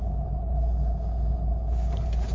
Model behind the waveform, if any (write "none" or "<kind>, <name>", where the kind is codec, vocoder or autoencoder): none